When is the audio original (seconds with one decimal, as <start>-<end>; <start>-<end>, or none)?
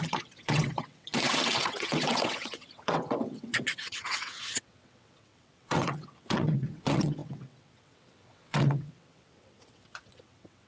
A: none